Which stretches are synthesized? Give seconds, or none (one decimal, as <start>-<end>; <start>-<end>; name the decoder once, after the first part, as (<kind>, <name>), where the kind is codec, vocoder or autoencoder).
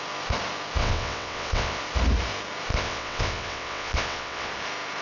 0.8-1.8 (vocoder, WaveNeXt); 2.7-4.5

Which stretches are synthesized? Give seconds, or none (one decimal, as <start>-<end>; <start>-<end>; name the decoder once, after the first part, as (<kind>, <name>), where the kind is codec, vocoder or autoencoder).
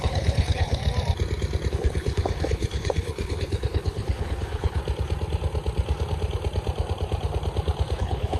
0.0-0.8 (codec, HILCodec); 1.7-4.8; 8.0-8.4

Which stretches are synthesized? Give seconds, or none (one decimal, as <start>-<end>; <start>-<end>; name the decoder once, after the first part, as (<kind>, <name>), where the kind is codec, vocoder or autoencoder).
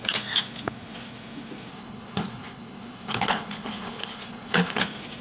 1.7-4.8 (codec, HILCodec)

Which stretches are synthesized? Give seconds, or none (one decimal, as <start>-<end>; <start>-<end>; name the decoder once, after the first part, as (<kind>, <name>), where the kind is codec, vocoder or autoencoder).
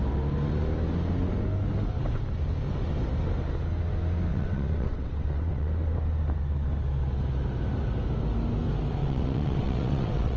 4.3-5.7 (vocoder, WaveNeXt); 9.0-10.4